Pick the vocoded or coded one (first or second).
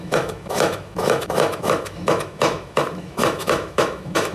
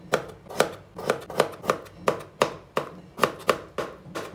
first